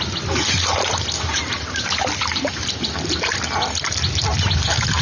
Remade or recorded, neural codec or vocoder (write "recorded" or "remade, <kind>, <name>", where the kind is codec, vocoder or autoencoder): recorded